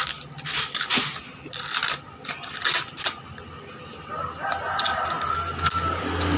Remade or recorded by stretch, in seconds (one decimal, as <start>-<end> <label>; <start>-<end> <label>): 0.0-6.4 recorded